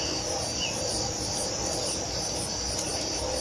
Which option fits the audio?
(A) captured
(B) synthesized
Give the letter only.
A